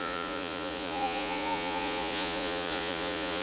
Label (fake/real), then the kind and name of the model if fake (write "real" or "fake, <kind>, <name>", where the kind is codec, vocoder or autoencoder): fake, vocoder, Vocos